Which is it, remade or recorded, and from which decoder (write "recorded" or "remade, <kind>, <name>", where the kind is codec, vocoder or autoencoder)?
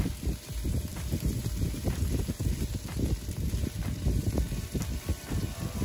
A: remade, vocoder, BigVGAN v2